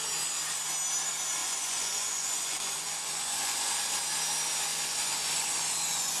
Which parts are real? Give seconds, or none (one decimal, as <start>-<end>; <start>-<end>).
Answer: 0.0-1.4; 3.7-4.7